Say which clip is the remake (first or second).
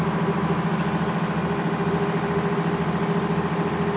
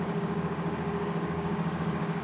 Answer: second